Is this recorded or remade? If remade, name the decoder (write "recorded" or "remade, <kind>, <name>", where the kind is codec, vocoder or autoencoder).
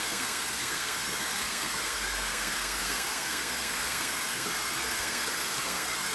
remade, codec, SNAC